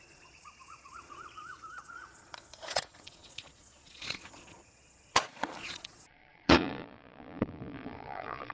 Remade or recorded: remade